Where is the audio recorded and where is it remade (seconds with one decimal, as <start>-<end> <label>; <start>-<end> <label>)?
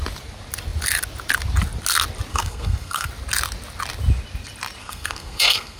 0.0-2.3 recorded; 2.3-3.1 remade; 3.1-4.8 recorded; 4.8-5.8 remade